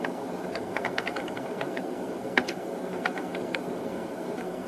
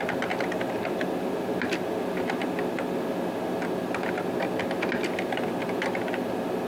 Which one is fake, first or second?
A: first